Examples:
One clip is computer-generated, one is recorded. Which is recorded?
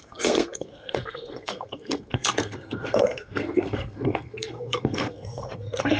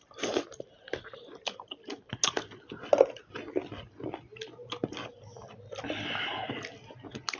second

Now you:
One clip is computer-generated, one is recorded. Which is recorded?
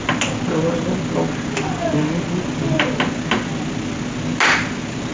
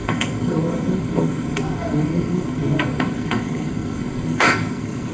first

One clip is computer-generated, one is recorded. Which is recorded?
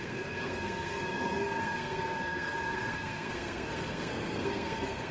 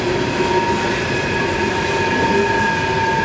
second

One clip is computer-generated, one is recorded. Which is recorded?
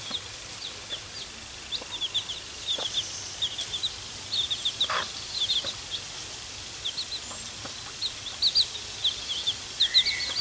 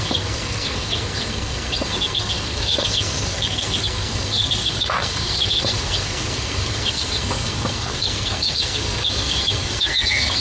first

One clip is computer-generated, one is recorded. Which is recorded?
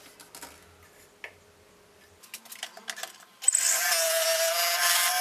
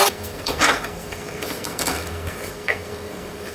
first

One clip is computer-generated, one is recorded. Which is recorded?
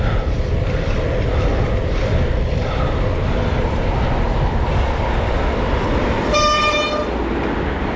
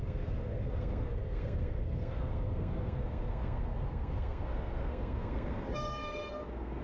first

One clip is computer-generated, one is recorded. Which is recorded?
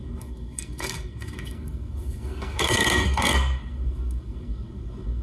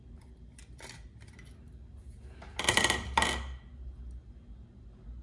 second